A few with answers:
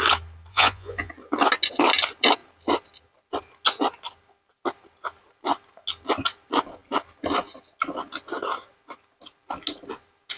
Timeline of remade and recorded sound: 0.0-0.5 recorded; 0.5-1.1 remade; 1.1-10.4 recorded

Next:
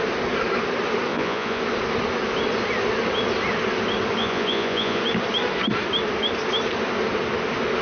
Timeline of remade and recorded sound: 0.0-1.1 recorded; 1.1-1.6 remade; 1.6-4.2 recorded; 4.2-5.0 remade; 5.0-7.8 recorded

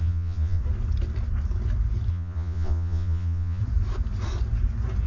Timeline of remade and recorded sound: 0.0-0.6 remade; 0.6-2.1 recorded; 2.1-3.6 remade; 3.6-5.1 recorded

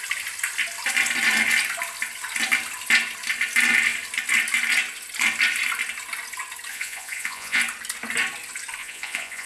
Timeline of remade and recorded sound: 0.0-6.7 recorded; 6.7-7.6 remade; 7.6-8.8 recorded; 8.8-9.5 remade

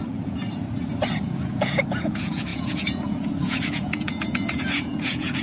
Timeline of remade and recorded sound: 0.0-0.4 remade; 0.4-1.3 recorded; 1.3-5.4 remade

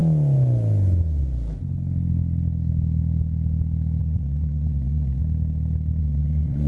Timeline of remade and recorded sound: 0.0-4.0 recorded; 4.0-5.2 remade; 5.2-6.0 recorded; 6.0-6.7 remade

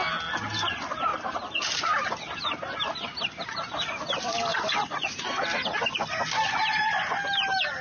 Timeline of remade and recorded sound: 0.0-4.5 recorded; 4.5-5.1 remade; 5.1-7.8 recorded